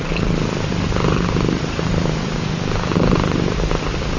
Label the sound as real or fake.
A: real